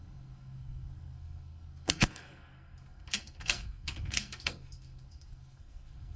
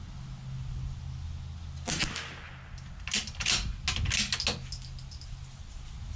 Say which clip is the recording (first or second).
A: second